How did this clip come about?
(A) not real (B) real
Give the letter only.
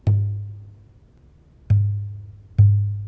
B